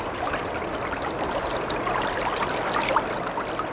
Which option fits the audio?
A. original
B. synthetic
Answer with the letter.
A